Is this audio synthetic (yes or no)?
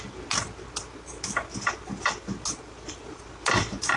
no